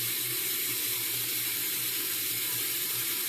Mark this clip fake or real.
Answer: fake